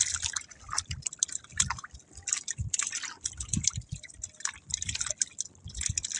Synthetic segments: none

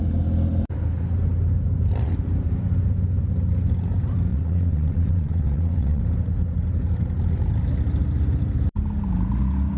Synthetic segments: 4.3-6.0 (vocoder, WaveNeXt)

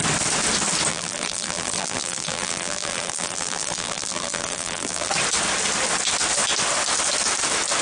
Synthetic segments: 0.9-5.1 (vocoder, BigVGAN v2)

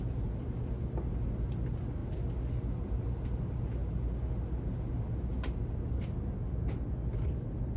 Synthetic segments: none

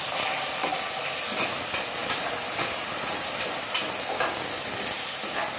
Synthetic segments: none

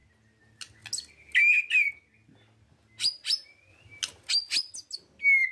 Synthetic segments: none

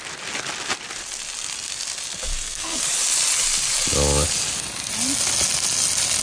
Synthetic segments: 2.3-2.8 (codec, SNAC)

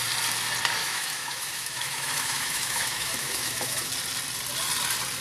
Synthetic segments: 0.8-3.9 (autoencoder, DAC-VAE)